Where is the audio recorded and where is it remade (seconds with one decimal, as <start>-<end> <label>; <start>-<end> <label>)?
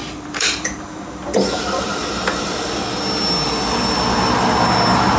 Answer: 0.0-2.7 remade; 2.7-5.2 recorded